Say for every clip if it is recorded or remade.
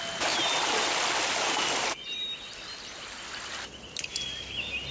recorded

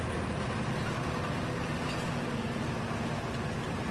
recorded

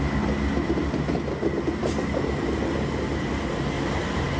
recorded